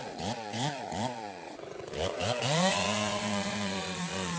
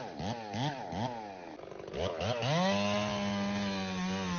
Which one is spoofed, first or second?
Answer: first